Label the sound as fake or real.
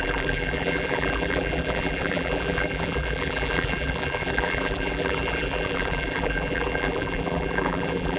fake